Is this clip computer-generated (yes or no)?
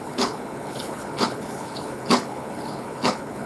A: yes